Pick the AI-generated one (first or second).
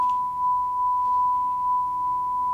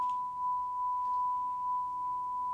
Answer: first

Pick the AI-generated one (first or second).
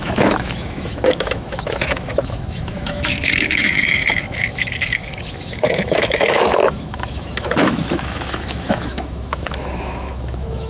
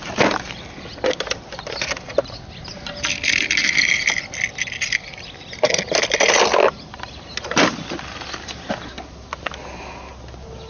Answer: first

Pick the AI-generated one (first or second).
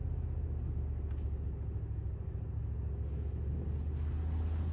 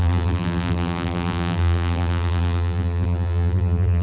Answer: second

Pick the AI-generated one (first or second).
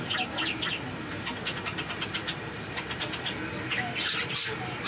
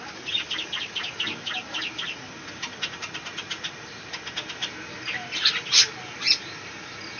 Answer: first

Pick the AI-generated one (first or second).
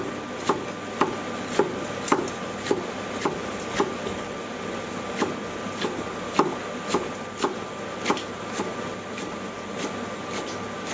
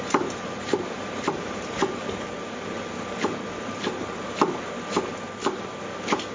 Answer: second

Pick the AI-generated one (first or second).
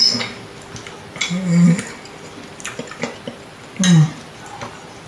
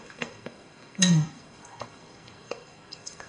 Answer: second